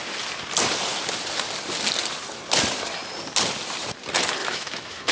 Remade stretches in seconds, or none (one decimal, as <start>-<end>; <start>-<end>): 4.4-5.1